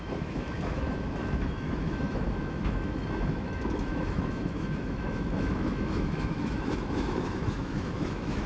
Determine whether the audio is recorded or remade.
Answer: remade